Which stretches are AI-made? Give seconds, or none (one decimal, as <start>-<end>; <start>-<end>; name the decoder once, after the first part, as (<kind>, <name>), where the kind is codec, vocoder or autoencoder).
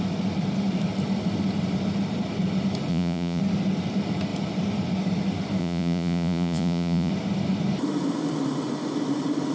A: 2.9-3.4 (vocoder, Vocos); 5.6-7.1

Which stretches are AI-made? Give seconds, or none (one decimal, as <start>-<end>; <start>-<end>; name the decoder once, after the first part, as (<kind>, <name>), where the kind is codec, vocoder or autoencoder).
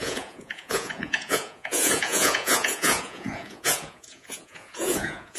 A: 0.0-5.4 (vocoder, Vocos)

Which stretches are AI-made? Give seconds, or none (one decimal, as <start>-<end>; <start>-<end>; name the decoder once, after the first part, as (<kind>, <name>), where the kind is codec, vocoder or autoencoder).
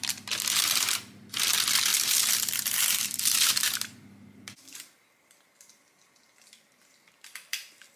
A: none